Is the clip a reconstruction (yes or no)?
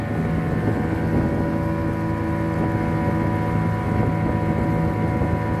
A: no